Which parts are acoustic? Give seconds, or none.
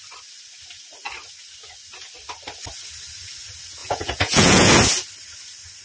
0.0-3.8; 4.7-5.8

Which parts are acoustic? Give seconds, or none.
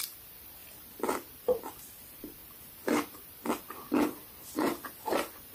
0.6-1.3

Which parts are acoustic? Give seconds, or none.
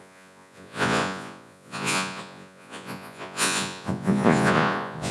none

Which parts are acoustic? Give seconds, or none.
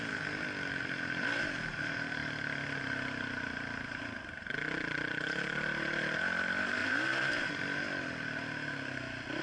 0.0-6.8; 7.5-9.4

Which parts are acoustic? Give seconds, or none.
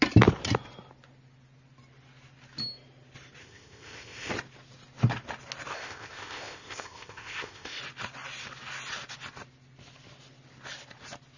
0.0-3.4; 4.3-5.7; 7.8-11.4